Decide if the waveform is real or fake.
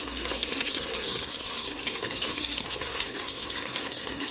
fake